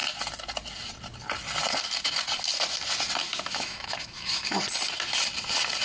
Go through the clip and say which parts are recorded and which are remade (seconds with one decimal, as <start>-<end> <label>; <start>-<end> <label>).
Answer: 0.0-3.3 recorded; 3.3-4.6 remade; 4.6-5.8 recorded